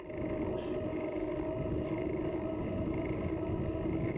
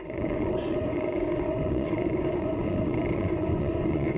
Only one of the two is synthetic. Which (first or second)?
second